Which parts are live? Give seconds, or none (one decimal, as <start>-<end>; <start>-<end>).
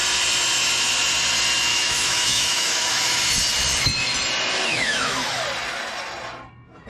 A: 0.0-1.7; 3.2-4.7; 5.4-6.9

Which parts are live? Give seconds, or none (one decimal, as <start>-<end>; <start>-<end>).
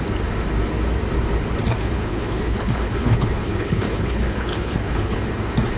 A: 0.0-1.8; 5.2-5.8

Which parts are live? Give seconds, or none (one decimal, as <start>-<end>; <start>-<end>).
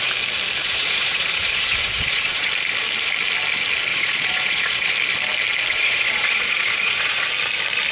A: 0.0-0.6; 2.5-3.9; 4.9-5.7; 7.2-7.9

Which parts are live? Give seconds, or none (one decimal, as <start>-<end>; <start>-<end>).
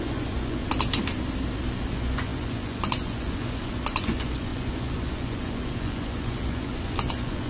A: 0.6-1.9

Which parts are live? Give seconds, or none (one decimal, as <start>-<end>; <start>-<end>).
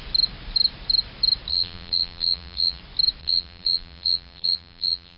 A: 0.0-1.5; 2.8-3.2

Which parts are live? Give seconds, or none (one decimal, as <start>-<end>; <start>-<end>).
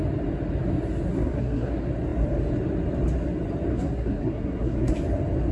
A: 0.0-1.1; 1.7-3.7; 4.9-5.5